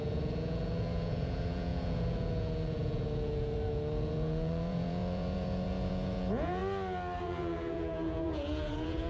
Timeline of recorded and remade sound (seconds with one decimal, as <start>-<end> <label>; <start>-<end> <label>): 0.0-6.6 remade; 6.6-7.2 recorded; 7.2-9.1 remade